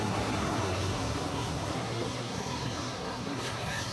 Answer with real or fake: fake